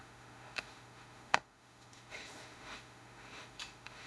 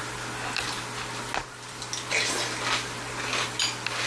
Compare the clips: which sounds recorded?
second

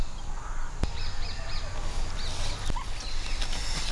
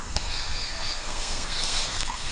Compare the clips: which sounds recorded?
first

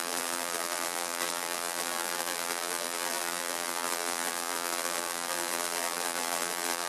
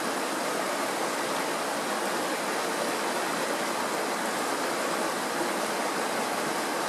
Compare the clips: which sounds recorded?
second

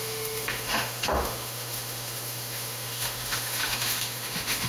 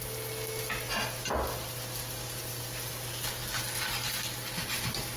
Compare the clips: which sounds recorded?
second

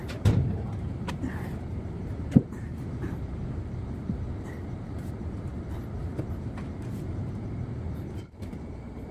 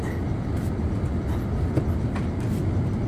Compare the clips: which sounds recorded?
second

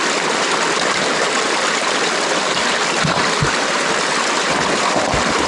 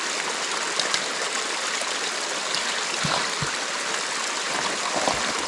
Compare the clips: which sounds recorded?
second